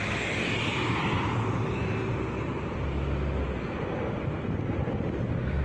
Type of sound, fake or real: real